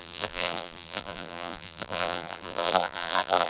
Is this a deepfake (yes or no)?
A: yes